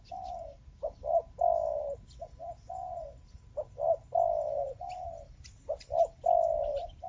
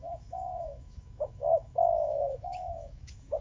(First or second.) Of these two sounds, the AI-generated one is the second